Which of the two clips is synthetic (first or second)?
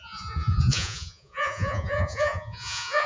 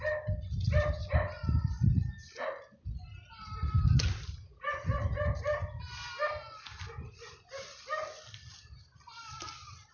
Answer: first